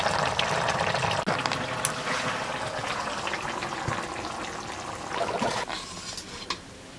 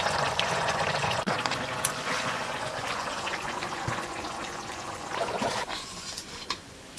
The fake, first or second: second